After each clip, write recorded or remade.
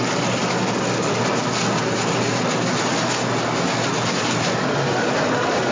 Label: recorded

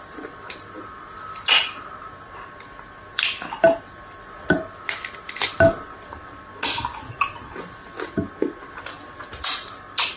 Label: recorded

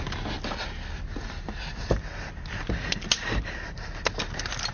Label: recorded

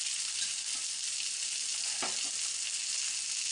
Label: recorded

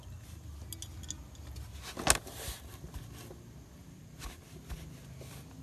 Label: recorded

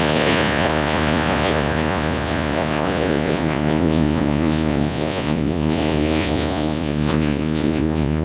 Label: remade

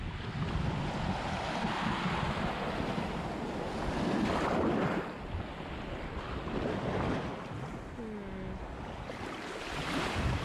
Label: recorded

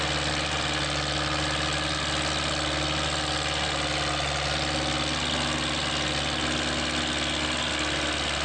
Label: recorded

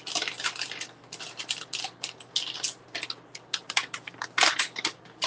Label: recorded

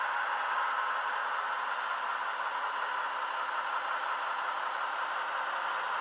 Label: recorded